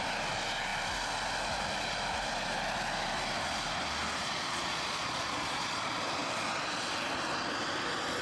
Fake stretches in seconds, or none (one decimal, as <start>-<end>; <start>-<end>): 4.2-5.7